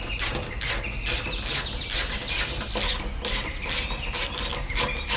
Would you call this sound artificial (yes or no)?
no